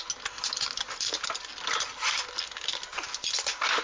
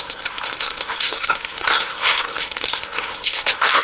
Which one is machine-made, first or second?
second